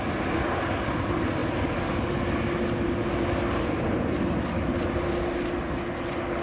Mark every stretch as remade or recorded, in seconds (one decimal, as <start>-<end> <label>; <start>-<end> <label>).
0.0-6.4 recorded